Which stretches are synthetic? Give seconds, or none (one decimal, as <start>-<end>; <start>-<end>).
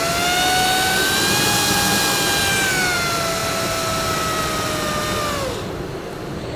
none